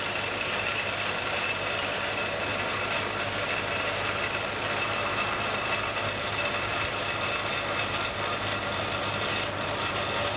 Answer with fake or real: real